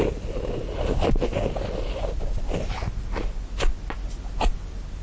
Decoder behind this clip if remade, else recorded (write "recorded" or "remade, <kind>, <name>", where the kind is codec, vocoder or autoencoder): recorded